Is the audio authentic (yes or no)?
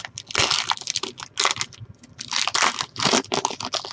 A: yes